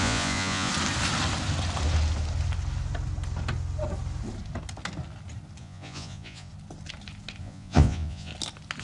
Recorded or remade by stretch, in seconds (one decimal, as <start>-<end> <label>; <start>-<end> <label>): 0.0-0.7 remade; 0.7-5.6 recorded; 5.6-6.5 remade; 6.5-7.4 recorded; 7.4-8.3 remade; 8.3-8.8 recorded